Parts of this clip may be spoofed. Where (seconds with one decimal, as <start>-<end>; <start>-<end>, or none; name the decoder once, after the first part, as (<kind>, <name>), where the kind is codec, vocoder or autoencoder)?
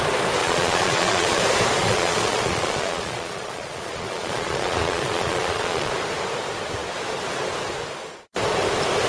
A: 0.4-1.4 (vocoder, Vocos); 1.8-5.9